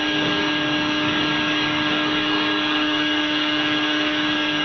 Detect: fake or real fake